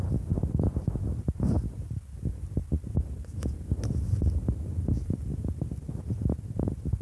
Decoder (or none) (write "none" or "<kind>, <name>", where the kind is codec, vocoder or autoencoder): vocoder, BigVGAN v2